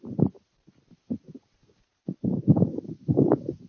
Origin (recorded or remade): recorded